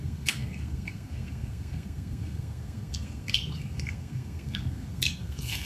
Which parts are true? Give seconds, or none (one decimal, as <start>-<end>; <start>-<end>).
none

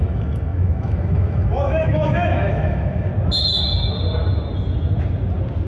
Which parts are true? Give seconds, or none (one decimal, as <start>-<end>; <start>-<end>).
3.1-5.7

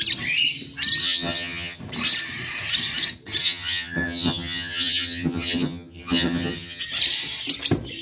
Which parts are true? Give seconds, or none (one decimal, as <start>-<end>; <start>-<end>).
0.0-1.0; 1.8-3.4; 6.8-8.0

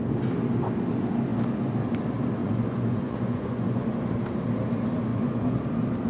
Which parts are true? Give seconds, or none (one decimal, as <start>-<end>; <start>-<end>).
0.0-2.4; 4.0-5.1; 5.6-6.1

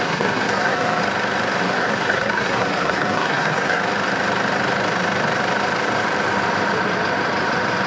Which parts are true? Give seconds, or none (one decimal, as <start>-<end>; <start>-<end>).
1.0-1.6; 3.8-7.9

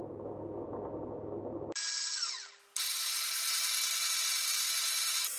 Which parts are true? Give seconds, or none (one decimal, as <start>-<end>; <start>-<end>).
0.0-5.4

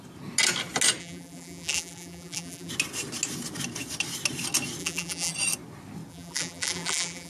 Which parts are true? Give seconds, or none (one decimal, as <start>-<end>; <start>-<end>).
0.0-1.0; 2.7-4.8; 5.3-6.1